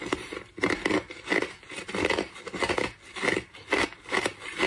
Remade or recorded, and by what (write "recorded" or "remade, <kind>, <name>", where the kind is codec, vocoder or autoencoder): recorded